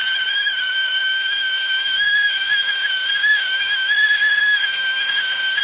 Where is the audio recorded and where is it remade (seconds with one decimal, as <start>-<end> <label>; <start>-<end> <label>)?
0.0-0.6 recorded; 0.6-5.6 remade